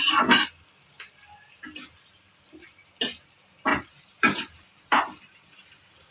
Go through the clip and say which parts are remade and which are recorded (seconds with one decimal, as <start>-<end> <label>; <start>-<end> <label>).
0.0-3.7 recorded; 3.7-6.1 remade